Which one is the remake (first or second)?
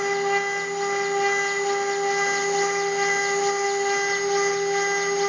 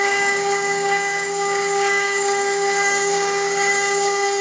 second